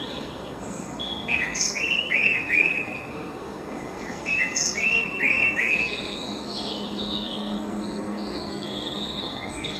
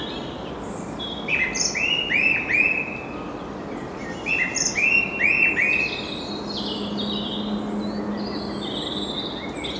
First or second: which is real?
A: second